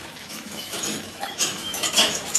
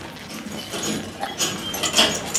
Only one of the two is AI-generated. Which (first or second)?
first